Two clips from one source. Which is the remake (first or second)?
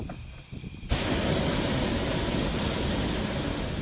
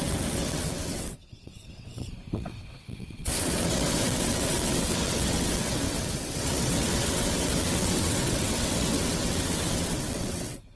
second